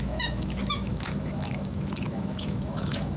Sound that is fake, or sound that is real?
fake